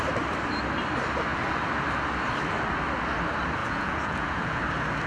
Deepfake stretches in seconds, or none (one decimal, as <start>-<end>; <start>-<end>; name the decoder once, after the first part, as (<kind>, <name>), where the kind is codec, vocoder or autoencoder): 3.6-4.6 (vocoder, Vocos)